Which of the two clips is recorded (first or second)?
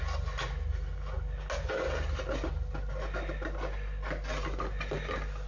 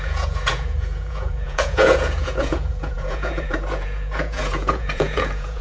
first